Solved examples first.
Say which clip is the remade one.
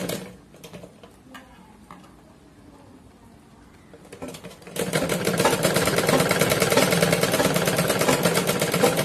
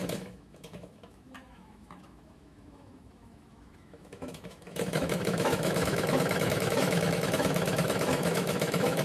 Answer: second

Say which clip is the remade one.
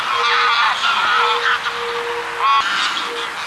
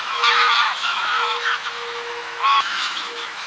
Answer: second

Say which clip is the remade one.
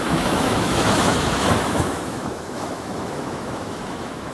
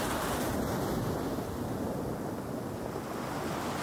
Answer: first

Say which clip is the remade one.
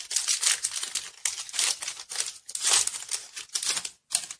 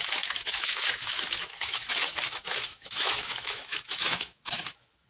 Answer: second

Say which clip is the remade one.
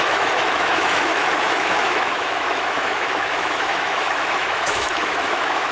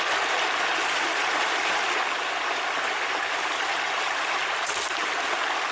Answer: first